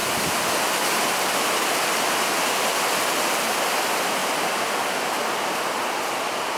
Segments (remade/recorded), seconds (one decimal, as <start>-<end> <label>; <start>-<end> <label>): 0.0-6.6 recorded